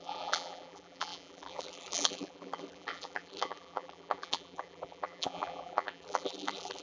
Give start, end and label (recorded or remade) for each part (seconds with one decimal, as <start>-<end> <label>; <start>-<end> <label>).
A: 0.0-6.8 remade